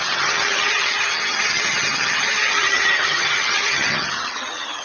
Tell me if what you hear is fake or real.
fake